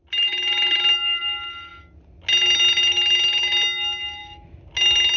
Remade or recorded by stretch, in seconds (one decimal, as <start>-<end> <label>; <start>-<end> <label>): 0.0-5.2 recorded